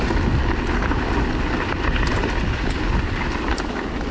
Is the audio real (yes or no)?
yes